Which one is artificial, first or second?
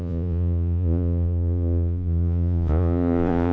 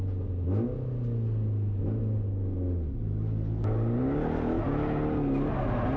first